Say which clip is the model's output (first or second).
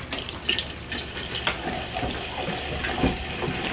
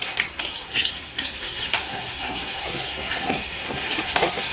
second